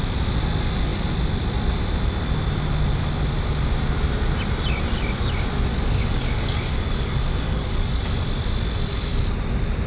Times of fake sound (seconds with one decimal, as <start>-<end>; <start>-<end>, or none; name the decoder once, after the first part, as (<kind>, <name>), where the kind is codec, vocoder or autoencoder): 5.7-8.0 (codec, DAC)

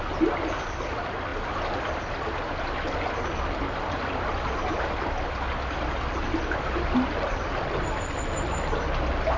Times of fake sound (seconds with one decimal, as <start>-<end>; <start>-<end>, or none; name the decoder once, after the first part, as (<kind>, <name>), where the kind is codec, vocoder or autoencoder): none

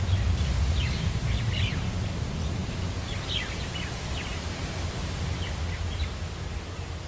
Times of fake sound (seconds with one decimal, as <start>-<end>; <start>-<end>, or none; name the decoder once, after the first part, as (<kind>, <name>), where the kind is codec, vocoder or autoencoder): none

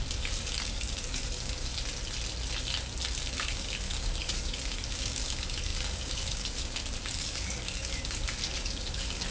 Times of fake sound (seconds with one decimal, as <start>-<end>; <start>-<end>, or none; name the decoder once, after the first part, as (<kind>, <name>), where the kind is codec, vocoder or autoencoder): 0.0-1.7 (codec, DAC); 3.2-9.3

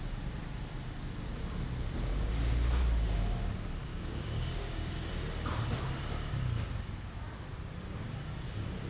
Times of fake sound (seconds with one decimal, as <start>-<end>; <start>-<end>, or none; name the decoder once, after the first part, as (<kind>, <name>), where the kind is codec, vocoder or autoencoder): 3.9-4.9 (codec, DAC)